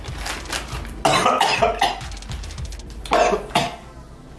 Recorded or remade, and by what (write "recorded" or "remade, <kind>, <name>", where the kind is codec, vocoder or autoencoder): recorded